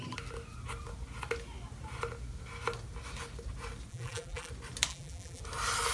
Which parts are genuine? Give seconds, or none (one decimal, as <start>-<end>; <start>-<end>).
0.0-3.9; 4.5-4.9; 5.4-5.9